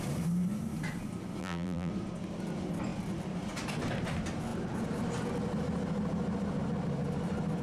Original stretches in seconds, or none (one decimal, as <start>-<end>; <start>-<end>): 0.0-1.4; 1.9-7.6